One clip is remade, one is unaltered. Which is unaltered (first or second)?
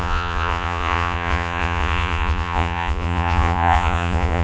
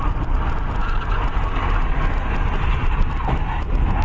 second